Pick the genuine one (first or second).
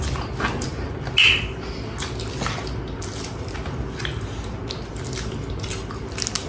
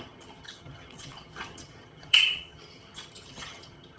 first